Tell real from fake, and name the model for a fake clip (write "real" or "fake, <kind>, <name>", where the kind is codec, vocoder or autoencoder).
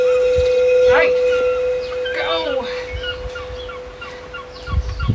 real